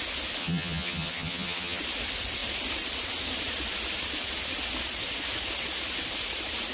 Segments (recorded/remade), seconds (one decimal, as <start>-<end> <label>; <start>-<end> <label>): 0.0-0.4 recorded; 0.4-1.8 remade; 1.8-6.7 recorded